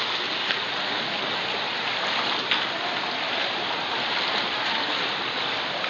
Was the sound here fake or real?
real